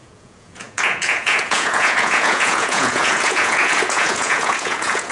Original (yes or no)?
no